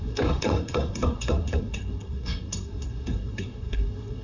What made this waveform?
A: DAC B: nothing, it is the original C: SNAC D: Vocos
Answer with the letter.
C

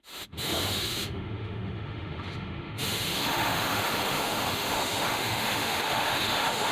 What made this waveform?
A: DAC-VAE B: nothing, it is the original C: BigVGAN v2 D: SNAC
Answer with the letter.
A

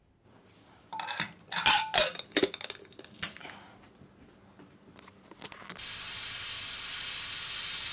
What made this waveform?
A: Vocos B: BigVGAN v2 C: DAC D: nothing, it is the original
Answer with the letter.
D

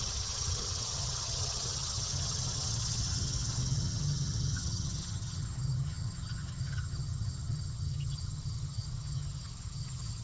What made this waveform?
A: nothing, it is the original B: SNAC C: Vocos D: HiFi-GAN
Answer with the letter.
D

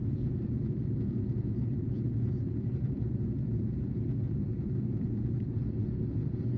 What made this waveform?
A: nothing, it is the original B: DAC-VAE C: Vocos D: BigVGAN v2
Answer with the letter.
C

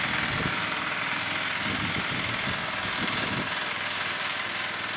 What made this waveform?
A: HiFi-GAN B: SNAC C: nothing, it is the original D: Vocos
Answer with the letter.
C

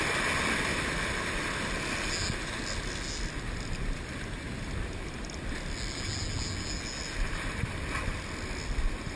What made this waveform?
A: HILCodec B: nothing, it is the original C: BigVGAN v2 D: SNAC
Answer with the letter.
B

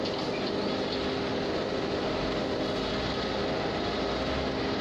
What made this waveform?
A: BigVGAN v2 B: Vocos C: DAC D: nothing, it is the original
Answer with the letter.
D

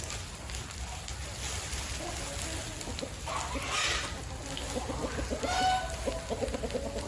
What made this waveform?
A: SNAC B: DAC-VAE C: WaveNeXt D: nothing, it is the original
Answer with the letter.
D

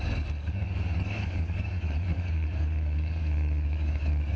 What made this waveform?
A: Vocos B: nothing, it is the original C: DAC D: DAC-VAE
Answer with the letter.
C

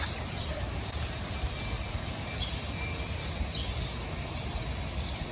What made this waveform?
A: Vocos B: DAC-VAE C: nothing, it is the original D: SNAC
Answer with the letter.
C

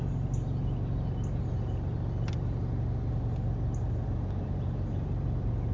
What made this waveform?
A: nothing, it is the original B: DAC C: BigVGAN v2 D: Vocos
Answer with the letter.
A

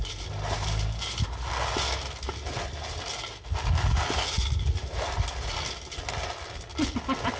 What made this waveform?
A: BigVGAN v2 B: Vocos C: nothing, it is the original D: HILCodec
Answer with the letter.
C